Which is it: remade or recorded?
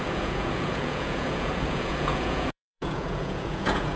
remade